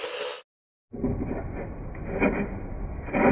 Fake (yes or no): no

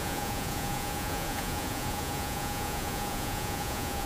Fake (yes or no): yes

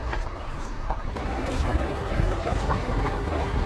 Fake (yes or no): yes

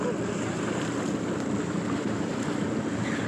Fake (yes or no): no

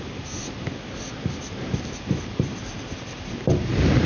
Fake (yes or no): no